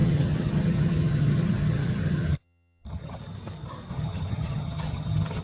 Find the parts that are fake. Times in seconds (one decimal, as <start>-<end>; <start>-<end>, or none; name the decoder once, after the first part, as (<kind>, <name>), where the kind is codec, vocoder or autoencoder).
0.0-3.2 (vocoder, HiFi-GAN); 3.9-5.4